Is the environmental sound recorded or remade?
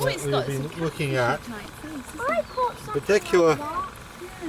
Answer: recorded